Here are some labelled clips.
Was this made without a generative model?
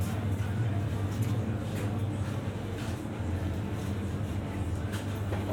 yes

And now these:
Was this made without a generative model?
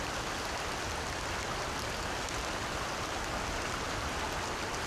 yes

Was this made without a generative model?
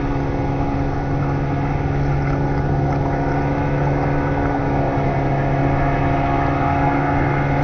yes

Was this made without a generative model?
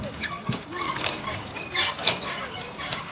no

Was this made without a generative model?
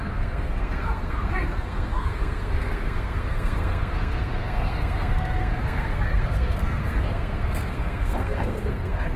no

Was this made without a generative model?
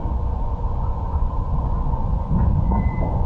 no